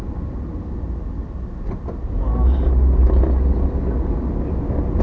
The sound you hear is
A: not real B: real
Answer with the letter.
B